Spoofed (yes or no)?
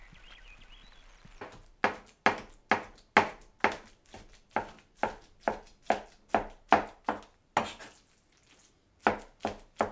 no